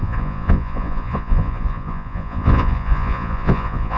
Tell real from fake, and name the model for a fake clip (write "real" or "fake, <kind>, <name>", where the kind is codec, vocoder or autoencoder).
fake, vocoder, Vocos